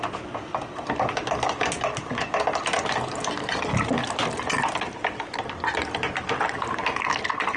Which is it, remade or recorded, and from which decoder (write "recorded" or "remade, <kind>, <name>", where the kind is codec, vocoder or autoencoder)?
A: recorded